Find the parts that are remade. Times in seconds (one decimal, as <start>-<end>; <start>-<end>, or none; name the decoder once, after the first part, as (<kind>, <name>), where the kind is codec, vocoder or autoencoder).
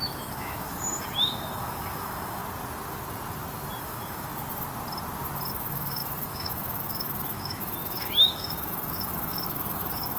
0.0-2.4 (autoencoder, DAC-VAE); 3.8-4.3; 5.5-10.2